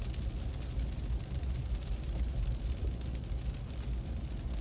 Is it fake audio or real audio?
real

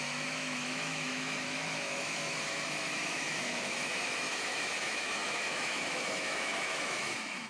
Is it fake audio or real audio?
fake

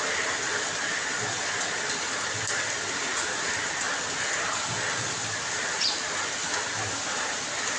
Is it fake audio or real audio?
real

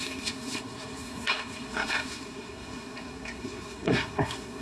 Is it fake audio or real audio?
fake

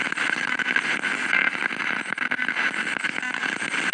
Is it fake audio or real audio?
real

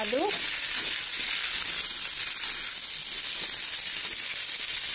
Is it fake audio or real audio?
real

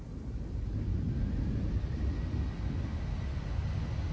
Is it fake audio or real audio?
real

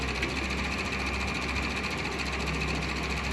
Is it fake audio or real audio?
real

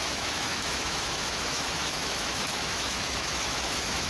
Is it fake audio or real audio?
fake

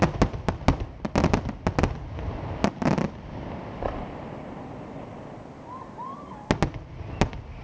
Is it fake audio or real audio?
real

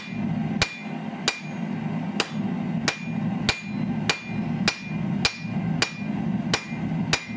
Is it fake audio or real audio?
real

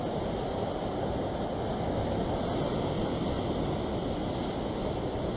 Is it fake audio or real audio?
real